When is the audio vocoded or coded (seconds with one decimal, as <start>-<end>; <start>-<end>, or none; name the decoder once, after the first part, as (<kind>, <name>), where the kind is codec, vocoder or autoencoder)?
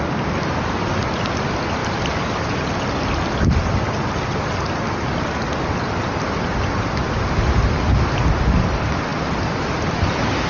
none